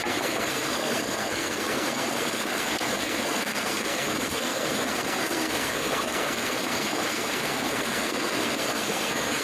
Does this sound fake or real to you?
fake